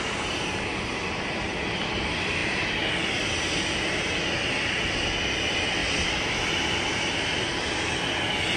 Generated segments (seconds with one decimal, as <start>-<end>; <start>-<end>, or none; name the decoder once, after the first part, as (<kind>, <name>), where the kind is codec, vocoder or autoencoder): none